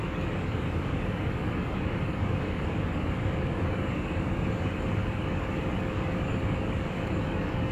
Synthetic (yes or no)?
yes